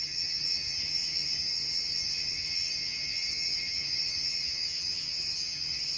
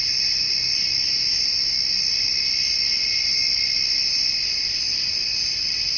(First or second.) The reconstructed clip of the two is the first